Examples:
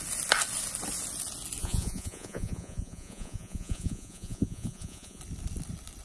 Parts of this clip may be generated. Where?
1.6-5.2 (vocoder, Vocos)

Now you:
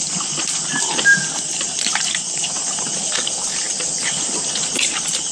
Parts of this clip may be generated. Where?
1.1-3.9 (vocoder, BigVGAN v2)

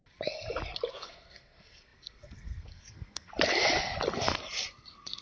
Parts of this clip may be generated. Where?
0.9-3.3 (codec, SNAC); 4.7-5.2

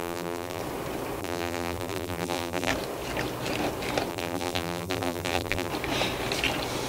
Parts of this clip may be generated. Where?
0.0-0.6 (vocoder, BigVGAN v2); 1.2-2.7; 4.1-5.7